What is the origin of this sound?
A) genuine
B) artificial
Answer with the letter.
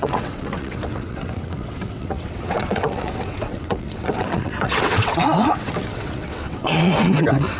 B